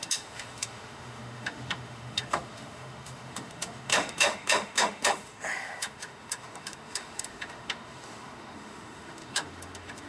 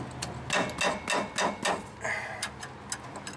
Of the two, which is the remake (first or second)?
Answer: first